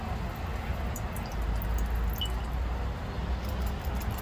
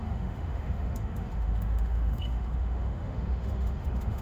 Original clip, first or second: first